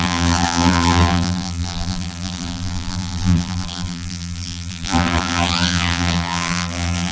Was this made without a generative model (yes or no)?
no